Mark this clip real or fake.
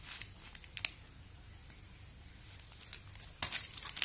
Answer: real